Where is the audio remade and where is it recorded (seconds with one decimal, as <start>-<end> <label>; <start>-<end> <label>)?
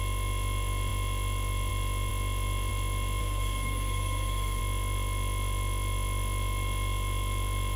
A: 0.0-3.2 recorded; 3.2-4.6 remade; 4.6-7.8 recorded